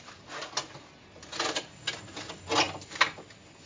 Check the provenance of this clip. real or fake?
real